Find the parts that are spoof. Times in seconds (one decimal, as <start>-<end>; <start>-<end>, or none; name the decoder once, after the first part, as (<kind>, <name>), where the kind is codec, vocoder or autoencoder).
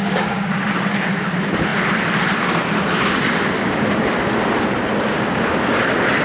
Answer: 0.0-0.5 (codec, DAC)